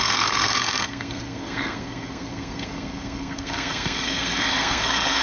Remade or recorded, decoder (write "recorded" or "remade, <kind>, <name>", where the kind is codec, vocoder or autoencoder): remade, codec, SNAC